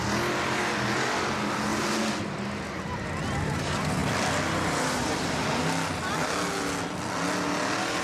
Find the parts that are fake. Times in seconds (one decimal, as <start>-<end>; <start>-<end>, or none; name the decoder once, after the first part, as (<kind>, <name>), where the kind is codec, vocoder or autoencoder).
none